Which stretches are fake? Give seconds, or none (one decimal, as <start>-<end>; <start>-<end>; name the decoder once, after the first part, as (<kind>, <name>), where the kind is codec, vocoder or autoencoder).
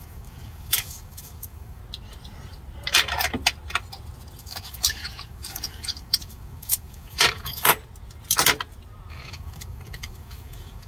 0.0-1.8 (codec, DAC); 4.4-7.7; 9.1-10.9